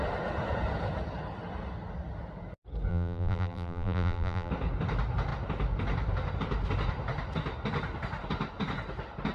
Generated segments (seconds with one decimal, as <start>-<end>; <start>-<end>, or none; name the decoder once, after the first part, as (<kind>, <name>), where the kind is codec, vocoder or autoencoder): 2.9-4.5 (vocoder, BigVGAN v2)